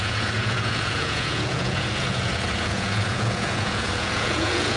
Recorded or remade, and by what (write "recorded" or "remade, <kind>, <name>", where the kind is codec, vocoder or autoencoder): remade, vocoder, Vocos